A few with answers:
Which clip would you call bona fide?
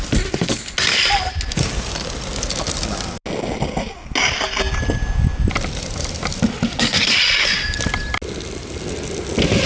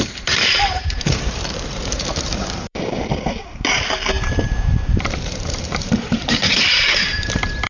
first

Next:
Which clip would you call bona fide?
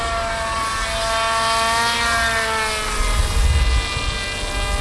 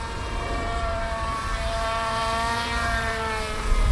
first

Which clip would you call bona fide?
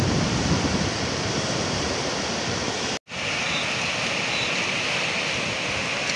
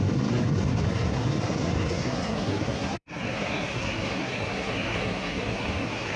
first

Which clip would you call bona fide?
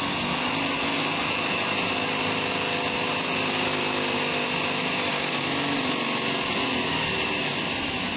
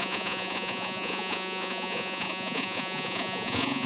first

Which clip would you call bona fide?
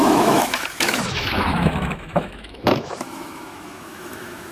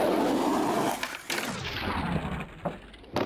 second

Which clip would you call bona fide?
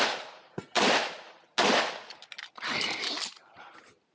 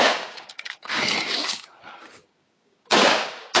first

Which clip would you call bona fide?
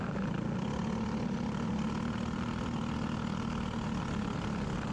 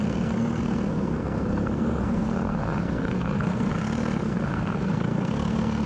first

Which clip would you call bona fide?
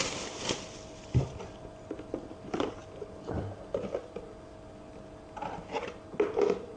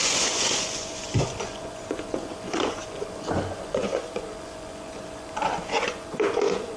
first